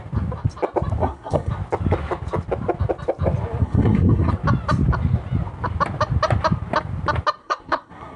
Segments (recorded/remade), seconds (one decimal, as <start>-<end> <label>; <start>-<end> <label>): 0.0-1.0 recorded; 1.0-1.5 remade; 1.5-3.6 recorded; 3.6-4.3 remade; 4.3-7.4 recorded; 7.4-8.2 remade